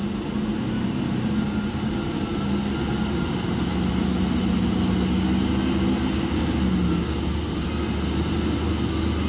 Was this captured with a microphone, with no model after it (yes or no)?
yes